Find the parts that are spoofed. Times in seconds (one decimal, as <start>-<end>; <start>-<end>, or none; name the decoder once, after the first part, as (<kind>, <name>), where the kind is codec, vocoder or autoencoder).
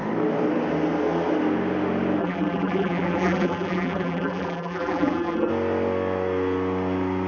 2.2-5.5 (vocoder, BigVGAN v2)